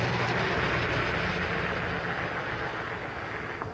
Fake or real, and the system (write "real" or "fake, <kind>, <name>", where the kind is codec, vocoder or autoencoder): real